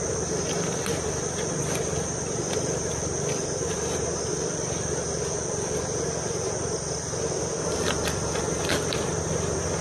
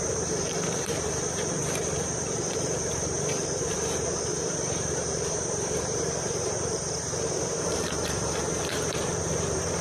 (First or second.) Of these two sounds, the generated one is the second